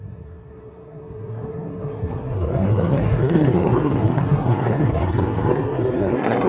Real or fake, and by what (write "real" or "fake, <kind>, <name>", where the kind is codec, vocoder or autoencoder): fake, codec, SNAC